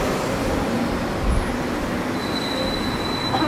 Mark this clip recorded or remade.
recorded